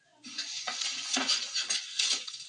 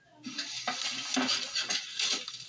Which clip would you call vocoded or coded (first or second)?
first